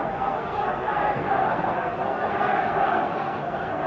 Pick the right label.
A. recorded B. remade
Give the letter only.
B